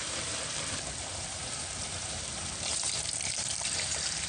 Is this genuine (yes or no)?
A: no